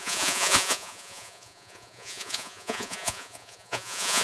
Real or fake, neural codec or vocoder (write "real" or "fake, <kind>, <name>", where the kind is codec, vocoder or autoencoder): fake, vocoder, Vocos